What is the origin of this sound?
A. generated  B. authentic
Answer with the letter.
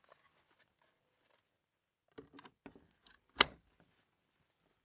B